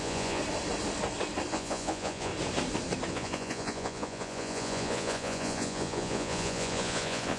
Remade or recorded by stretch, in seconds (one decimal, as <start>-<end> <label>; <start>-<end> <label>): 0.0-0.4 remade; 0.4-1.5 recorded; 1.5-2.3 remade; 2.3-3.1 recorded; 3.1-7.4 remade